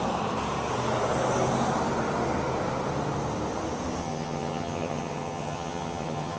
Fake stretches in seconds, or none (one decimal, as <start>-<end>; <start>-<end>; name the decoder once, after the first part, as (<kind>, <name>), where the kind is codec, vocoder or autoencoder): 4.0-6.4 (vocoder, HiFi-GAN)